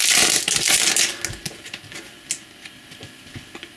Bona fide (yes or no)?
yes